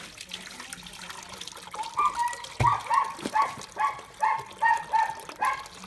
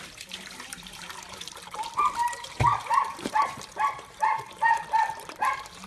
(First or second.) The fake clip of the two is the second